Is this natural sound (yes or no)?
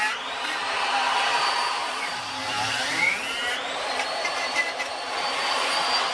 no